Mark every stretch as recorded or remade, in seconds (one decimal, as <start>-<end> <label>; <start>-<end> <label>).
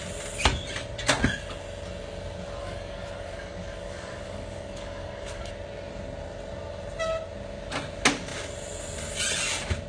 0.0-2.6 recorded; 2.6-5.5 remade; 5.5-9.9 recorded